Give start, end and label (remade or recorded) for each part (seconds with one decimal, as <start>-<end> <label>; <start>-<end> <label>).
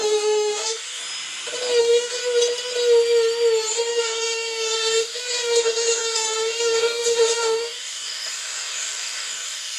0.0-1.0 remade; 1.0-1.8 recorded; 1.8-2.2 remade; 2.2-3.7 recorded; 3.7-9.8 remade